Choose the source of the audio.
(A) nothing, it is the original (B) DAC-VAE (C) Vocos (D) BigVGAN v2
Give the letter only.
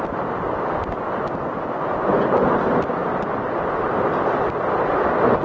A